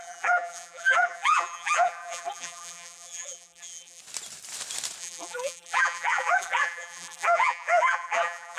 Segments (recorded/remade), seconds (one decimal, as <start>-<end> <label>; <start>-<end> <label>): 0.0-4.0 remade; 4.0-5.0 recorded; 5.0-8.6 remade